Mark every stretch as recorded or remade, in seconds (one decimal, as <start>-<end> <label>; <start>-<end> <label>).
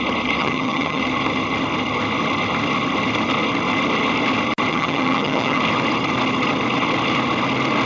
0.0-0.4 recorded; 0.4-1.0 remade; 1.0-4.7 recorded; 4.7-5.6 remade; 5.6-7.9 recorded